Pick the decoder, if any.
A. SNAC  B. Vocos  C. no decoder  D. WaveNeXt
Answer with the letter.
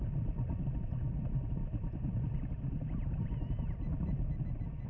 C